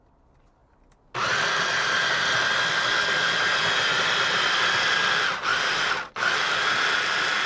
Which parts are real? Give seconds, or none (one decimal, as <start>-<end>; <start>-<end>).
0.0-7.5